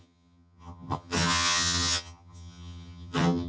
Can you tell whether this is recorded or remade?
remade